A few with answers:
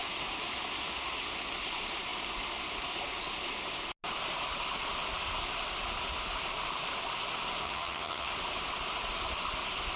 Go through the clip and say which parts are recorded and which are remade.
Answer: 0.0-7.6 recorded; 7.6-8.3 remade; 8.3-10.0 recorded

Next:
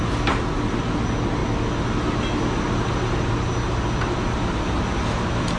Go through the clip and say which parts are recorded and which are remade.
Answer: 0.0-5.6 recorded

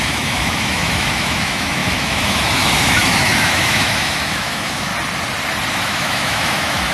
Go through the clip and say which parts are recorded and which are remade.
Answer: 0.0-4.9 remade; 4.9-5.7 recorded; 5.7-6.9 remade

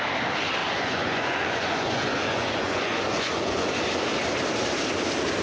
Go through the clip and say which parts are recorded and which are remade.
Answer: 0.0-0.6 recorded; 0.6-3.8 remade; 3.8-5.4 recorded

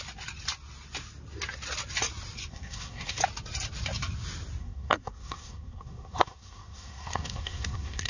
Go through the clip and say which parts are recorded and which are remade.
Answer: 0.0-2.5 recorded; 2.5-3.2 remade; 3.2-4.6 recorded; 4.6-8.1 remade